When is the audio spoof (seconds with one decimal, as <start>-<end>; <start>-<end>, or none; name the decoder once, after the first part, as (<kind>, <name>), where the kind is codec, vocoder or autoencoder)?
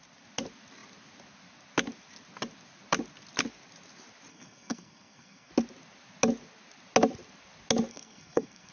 4.3-5.5 (codec, SNAC); 7.9-8.7